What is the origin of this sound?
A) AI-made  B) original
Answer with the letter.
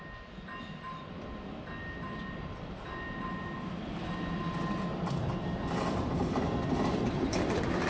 B